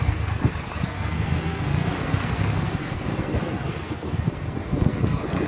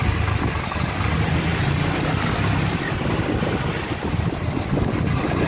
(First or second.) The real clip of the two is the second